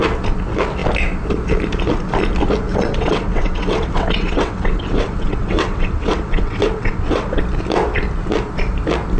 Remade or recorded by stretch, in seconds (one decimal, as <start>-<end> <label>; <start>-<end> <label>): 0.0-2.7 recorded; 2.7-7.4 remade; 7.4-9.2 recorded